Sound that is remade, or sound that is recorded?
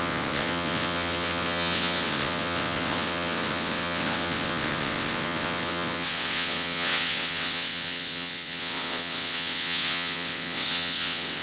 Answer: remade